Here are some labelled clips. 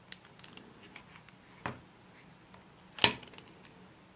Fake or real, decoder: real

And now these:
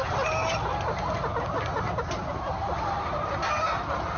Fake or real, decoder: real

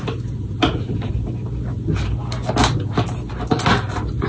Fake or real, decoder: real